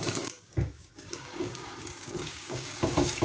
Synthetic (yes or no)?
yes